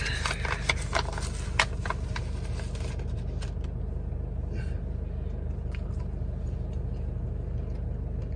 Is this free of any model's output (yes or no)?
yes